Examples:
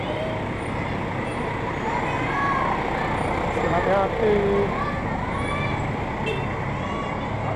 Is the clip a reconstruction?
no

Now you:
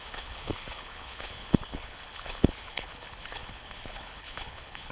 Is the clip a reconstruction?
yes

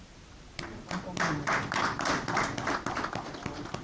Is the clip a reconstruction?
no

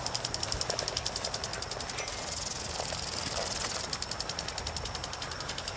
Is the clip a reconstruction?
yes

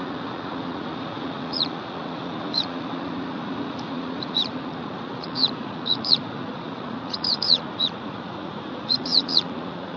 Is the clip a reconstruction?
yes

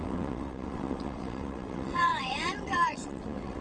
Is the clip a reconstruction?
yes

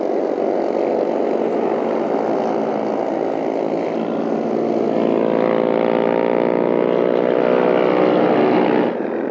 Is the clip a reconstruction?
no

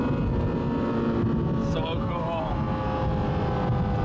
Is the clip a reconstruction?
no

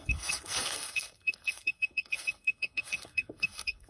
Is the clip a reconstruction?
yes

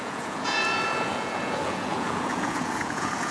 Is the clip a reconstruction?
yes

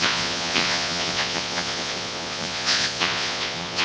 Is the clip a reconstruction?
yes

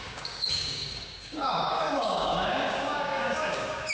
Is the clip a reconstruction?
yes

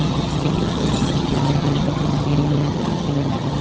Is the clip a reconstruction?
yes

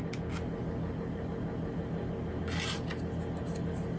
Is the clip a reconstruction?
no